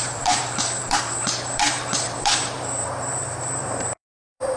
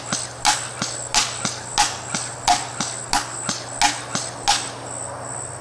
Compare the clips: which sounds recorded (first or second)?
second